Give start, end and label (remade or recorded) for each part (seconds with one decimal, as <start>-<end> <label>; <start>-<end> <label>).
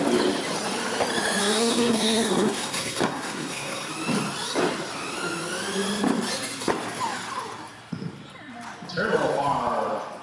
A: 0.0-1.4 recorded; 1.4-3.9 remade; 3.9-10.2 recorded